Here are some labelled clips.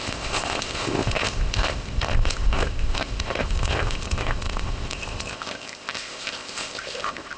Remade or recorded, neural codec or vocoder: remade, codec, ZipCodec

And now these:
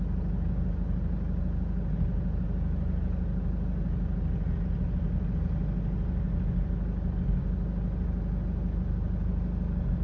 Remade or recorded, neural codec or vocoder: recorded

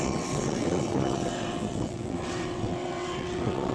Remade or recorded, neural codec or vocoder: remade, vocoder, WaveNeXt